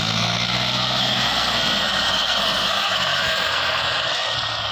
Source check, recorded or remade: remade